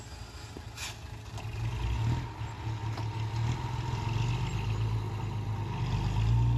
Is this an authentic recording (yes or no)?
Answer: yes